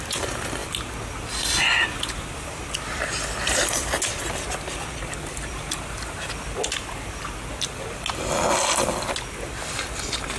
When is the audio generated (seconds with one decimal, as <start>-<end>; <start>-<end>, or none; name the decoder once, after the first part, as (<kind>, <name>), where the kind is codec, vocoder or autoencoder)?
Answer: none